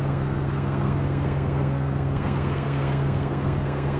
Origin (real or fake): fake